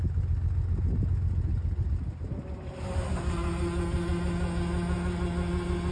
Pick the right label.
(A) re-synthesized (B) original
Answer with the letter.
B